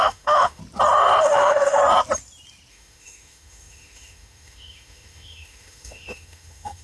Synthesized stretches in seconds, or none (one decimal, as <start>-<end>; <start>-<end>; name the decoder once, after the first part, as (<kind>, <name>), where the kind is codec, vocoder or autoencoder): 0.0-0.6 (autoencoder, DAC-VAE); 1.2-1.8; 2.7-6.8